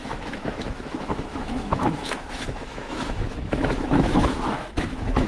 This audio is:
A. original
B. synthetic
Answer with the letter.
B